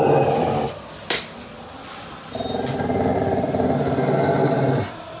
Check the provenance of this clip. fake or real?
real